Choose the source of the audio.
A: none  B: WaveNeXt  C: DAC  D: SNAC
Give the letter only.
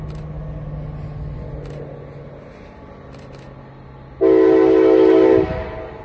A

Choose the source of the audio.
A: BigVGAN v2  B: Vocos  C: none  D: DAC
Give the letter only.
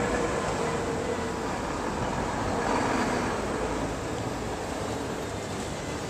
C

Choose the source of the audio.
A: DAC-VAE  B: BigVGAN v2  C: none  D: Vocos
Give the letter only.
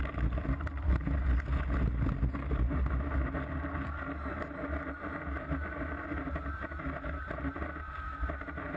C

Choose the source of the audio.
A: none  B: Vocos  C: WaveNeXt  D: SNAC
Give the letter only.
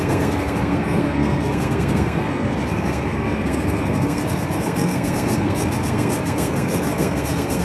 D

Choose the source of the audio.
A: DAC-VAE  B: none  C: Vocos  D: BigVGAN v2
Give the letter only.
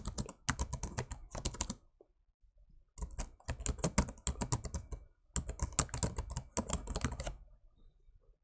B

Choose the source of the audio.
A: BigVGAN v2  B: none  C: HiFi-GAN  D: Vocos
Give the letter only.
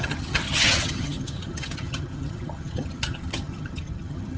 C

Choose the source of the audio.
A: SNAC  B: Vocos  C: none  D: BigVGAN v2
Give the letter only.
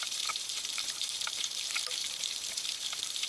D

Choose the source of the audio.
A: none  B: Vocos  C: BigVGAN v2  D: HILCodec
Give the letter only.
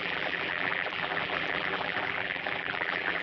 C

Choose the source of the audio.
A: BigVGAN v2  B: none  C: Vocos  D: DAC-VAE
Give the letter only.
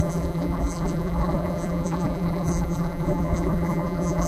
A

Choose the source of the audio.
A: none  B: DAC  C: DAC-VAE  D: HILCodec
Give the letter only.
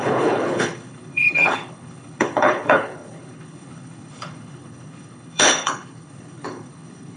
D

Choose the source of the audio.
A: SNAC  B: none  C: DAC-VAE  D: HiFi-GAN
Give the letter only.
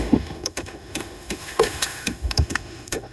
C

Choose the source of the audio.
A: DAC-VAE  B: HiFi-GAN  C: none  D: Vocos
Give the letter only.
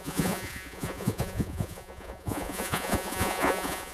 D